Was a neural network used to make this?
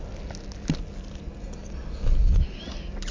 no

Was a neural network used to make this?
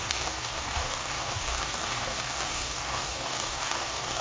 yes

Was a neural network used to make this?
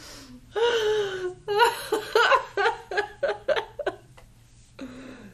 no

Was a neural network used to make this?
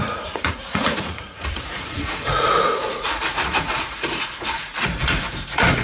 yes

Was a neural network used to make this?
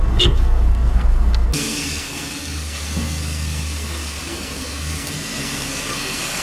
yes